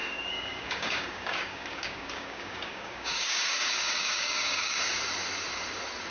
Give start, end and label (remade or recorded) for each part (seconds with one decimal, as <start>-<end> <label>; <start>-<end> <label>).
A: 0.0-4.9 remade; 4.9-6.1 recorded

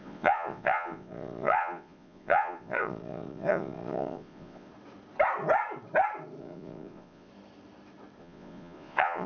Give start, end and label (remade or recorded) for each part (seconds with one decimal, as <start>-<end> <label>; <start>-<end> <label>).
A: 0.0-4.7 remade; 4.7-6.4 recorded; 6.4-7.3 remade; 7.3-8.2 recorded; 8.2-9.3 remade

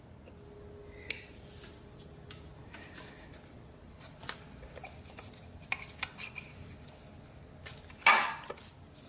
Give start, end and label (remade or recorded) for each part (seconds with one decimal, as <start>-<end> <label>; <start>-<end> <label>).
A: 0.0-9.1 recorded

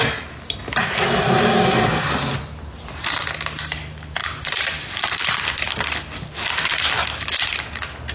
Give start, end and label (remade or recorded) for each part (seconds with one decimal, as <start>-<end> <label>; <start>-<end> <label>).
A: 0.0-8.1 recorded

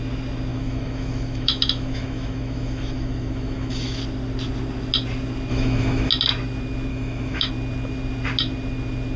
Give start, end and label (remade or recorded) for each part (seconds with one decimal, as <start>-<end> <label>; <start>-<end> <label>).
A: 0.0-0.5 recorded; 0.5-4.0 remade; 4.0-5.5 recorded; 5.5-6.1 remade; 6.1-6.9 recorded; 6.9-7.5 remade; 7.5-9.2 recorded

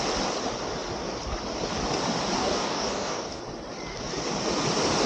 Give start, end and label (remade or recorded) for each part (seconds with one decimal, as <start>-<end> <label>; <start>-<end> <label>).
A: 0.0-2.4 recorded; 2.4-3.4 remade; 3.4-5.1 recorded

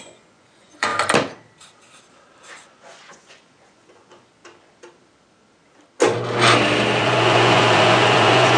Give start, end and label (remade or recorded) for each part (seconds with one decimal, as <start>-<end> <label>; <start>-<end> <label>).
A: 0.0-0.9 remade; 0.9-2.5 recorded; 2.5-4.4 remade; 4.4-7.0 recorded; 7.0-8.6 remade